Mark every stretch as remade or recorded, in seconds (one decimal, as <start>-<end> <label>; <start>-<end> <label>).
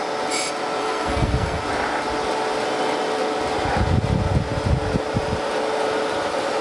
0.0-0.8 recorded; 0.8-1.6 remade; 1.6-6.6 recorded